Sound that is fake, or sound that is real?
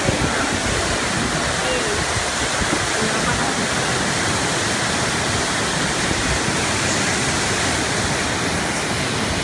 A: real